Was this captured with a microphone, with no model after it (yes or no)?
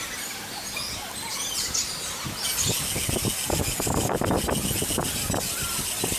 yes